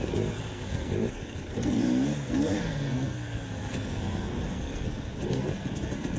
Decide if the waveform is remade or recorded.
remade